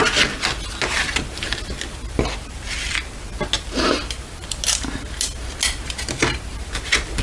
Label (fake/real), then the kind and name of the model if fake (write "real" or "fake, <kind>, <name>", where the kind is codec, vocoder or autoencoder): real